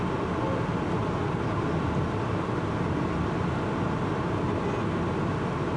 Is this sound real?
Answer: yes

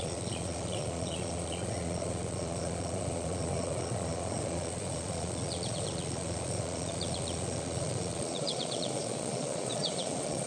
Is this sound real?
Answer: no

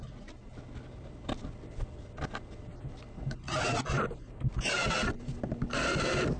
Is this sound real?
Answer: yes